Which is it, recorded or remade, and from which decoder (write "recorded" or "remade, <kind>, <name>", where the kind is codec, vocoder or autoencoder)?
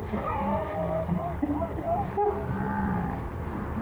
remade, vocoder, BigVGAN v2